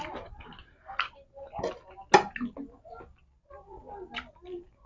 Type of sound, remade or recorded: recorded